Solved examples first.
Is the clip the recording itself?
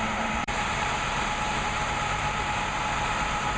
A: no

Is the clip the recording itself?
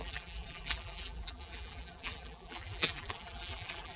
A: no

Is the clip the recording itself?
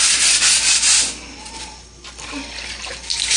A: yes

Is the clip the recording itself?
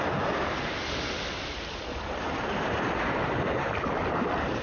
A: yes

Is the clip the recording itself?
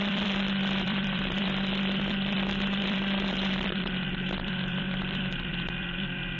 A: no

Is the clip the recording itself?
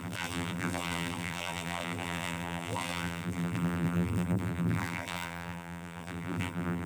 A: no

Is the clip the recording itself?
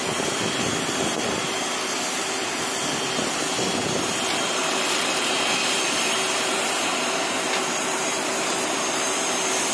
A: no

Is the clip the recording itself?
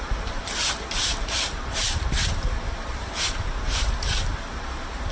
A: no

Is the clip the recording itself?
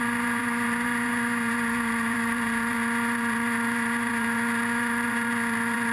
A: no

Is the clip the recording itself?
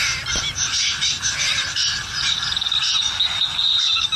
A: yes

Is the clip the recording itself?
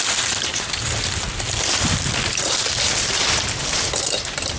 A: no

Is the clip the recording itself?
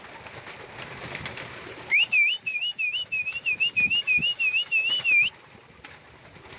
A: yes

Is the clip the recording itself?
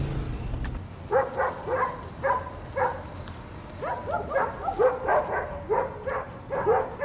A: yes